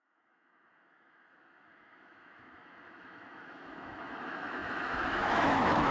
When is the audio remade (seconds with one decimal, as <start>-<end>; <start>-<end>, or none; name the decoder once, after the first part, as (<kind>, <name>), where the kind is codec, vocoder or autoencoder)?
0.0-5.9 (autoencoder, DAC-VAE)